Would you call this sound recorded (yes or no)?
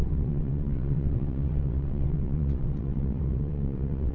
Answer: no